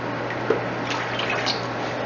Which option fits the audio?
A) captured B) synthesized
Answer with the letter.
A